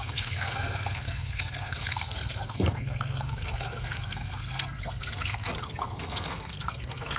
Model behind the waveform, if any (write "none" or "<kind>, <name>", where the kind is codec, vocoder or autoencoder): codec, SNAC